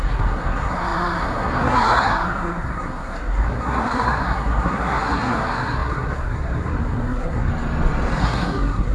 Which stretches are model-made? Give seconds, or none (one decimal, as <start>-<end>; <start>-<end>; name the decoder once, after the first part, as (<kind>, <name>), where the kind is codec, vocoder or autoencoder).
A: 0.0-7.5 (codec, SNAC); 8.2-8.9